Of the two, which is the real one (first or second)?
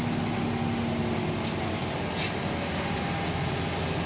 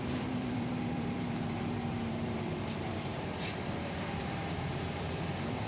first